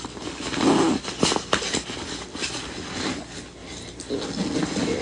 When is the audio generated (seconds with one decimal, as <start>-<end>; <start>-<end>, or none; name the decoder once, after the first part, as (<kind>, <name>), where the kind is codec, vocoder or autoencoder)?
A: 3.6-4.1 (vocoder, BigVGAN v2)